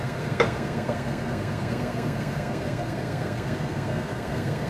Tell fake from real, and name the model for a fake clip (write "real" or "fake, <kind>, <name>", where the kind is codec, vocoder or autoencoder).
fake, codec, SNAC